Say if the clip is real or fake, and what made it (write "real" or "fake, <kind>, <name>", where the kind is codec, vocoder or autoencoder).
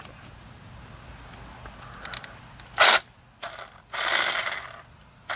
real